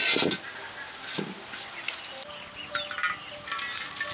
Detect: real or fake real